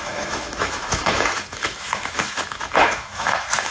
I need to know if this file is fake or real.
fake